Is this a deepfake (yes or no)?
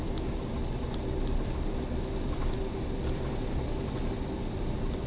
no